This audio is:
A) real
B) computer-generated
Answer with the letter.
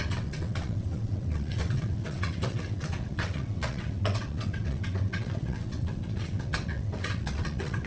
B